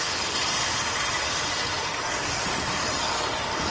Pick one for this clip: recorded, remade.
recorded